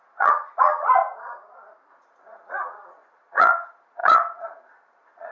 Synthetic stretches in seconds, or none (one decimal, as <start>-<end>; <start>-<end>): 0.0-1.0; 1.9-5.3